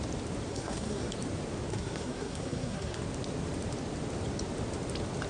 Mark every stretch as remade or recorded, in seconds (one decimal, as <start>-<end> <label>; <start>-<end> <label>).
0.0-0.5 recorded; 0.5-1.1 remade; 1.1-1.7 recorded; 1.7-3.0 remade; 3.0-5.3 recorded